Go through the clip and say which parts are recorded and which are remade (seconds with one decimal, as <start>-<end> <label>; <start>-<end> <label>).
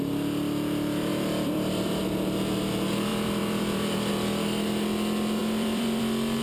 0.0-1.1 recorded; 1.1-2.0 remade; 2.0-3.1 recorded; 3.1-4.1 remade; 4.1-5.4 recorded; 5.4-6.0 remade; 6.0-6.4 recorded